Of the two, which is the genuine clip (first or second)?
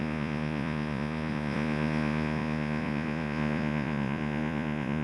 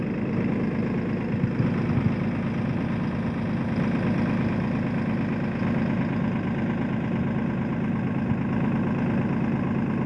second